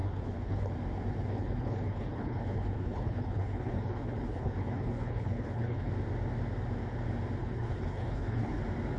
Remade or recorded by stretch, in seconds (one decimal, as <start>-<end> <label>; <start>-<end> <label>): 0.0-0.7 remade; 0.7-1.2 recorded; 1.2-5.9 remade; 5.9-7.4 recorded; 7.4-8.6 remade; 8.6-9.0 recorded